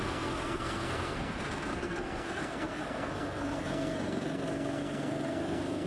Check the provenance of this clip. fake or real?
fake